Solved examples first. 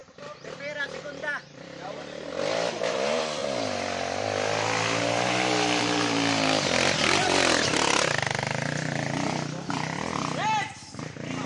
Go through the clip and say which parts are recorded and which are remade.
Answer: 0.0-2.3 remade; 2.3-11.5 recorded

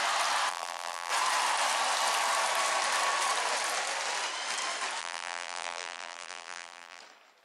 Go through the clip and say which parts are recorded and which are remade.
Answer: 0.0-0.5 recorded; 0.5-1.1 remade; 1.1-5.0 recorded; 5.0-7.0 remade; 7.0-7.4 recorded

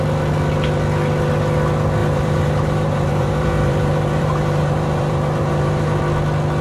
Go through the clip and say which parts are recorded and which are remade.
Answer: 0.0-2.0 recorded; 2.0-6.0 remade; 6.0-6.6 recorded

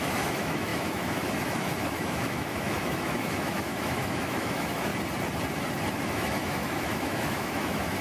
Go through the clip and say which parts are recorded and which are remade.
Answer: 0.0-4.9 remade; 4.9-6.0 recorded; 6.0-8.0 remade

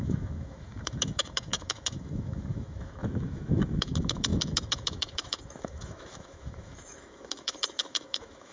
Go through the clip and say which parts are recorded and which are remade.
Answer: 0.0-8.5 remade